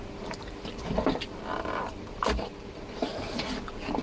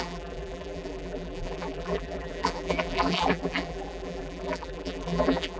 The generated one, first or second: second